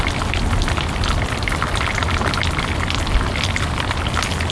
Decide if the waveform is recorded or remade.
recorded